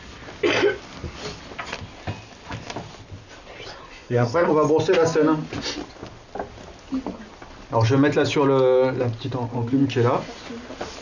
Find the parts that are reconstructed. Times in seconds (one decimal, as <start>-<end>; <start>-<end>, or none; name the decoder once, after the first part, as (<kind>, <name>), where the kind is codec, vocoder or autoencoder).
3.9-4.5 (codec, SNAC)